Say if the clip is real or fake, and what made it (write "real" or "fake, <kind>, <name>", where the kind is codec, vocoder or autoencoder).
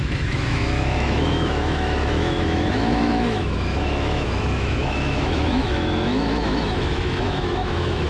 fake, autoencoder, DAC-VAE